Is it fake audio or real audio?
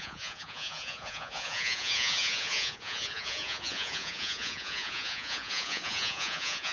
fake